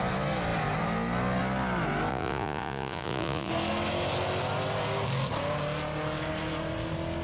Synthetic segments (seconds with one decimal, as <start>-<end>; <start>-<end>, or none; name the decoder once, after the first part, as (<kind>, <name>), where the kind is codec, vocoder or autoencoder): 2.1-3.5 (vocoder, Vocos)